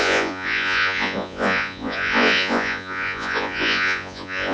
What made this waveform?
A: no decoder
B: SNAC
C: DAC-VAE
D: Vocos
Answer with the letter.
D